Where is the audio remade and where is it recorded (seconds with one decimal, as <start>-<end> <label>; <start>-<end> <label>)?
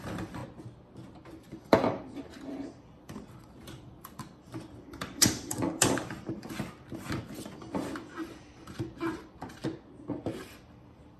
0.0-0.4 remade; 0.4-1.5 recorded; 1.5-9.6 remade; 9.6-10.5 recorded; 10.5-11.2 remade